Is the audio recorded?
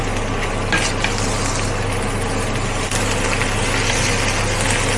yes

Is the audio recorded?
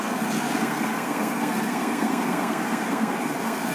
no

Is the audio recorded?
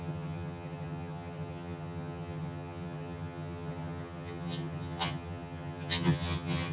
no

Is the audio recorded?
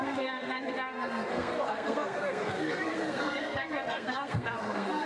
no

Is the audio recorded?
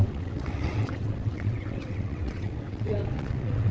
no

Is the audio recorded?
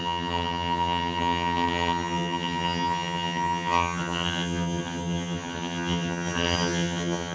no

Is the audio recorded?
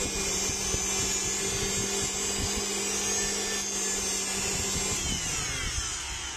yes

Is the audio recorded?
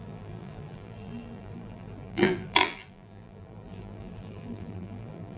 no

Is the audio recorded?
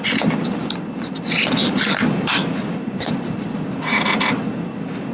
yes